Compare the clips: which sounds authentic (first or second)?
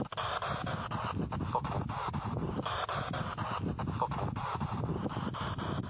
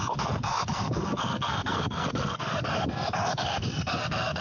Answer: first